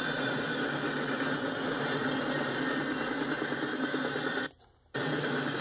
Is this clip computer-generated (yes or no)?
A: no